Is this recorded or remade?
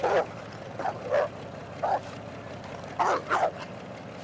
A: recorded